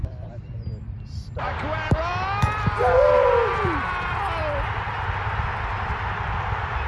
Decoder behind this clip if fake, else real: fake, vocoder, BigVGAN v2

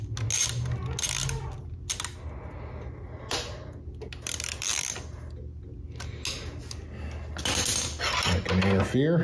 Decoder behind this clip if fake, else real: real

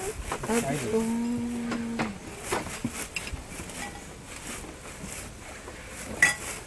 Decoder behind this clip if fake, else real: real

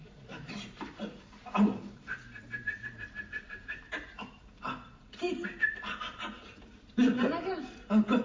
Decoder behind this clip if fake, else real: fake, vocoder, BigVGAN v2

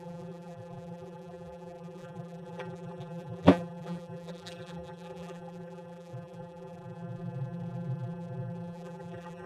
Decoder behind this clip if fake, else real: fake, vocoder, BigVGAN v2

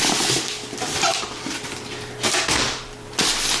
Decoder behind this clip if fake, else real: real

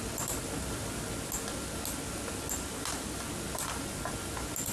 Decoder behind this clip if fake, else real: real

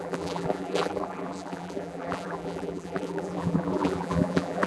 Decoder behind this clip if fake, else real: fake, vocoder, BigVGAN v2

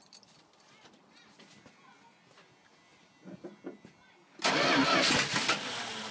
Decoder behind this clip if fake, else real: real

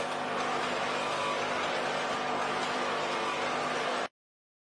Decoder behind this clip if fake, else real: real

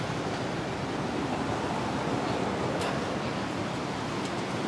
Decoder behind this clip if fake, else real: real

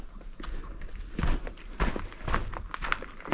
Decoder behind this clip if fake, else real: real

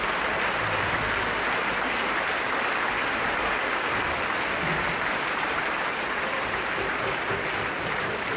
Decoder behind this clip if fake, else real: fake, vocoder, BigVGAN v2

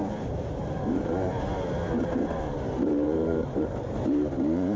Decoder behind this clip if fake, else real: fake, vocoder, BigVGAN v2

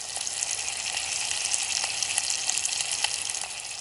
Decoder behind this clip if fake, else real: real